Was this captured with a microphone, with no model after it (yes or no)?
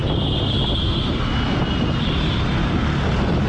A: yes